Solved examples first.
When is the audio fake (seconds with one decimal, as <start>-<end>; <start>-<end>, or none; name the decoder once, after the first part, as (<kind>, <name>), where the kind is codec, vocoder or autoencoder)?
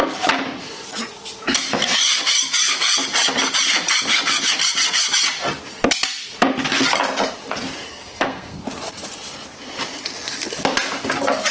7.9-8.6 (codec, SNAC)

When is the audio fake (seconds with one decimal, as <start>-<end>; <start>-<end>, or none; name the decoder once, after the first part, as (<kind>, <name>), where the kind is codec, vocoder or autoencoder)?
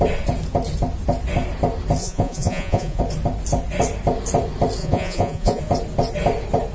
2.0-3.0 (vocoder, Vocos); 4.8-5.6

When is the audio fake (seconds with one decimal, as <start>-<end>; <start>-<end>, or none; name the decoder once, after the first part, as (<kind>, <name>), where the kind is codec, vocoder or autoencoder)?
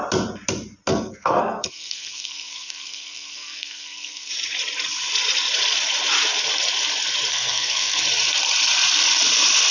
0.9-4.3 (codec, SNAC); 7.3-8.0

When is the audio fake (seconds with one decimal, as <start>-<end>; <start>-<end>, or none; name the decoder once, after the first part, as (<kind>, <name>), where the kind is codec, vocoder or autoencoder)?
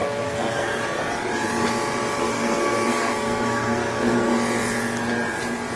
0.0-0.8 (codec, SNAC); 2.2-4.3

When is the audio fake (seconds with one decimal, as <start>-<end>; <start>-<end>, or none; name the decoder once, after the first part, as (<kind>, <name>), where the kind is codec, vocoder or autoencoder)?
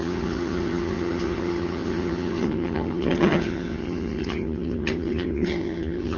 0.0-6.2 (vocoder, HiFi-GAN)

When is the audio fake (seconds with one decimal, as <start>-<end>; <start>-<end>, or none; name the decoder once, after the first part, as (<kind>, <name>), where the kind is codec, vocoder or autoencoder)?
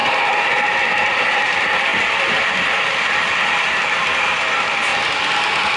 0.0-4.9 (vocoder, BigVGAN v2)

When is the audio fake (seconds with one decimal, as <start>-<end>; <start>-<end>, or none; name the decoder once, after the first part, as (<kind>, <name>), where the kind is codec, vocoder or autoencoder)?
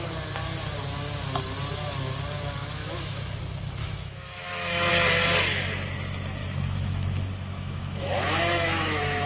2.6-3.4 (autoencoder, DAC-VAE); 3.8-4.9; 6.4-9.3